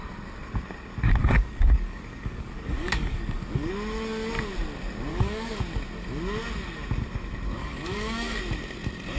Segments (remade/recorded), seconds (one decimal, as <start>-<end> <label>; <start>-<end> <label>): 0.0-1.2 recorded; 1.2-3.7 remade; 3.7-5.1 recorded; 5.1-5.6 remade; 5.6-7.6 recorded; 7.6-8.4 remade; 8.4-9.2 recorded